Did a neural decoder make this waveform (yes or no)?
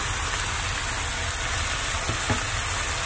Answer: no